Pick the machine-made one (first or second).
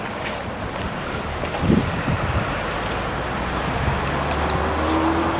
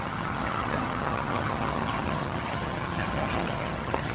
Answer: second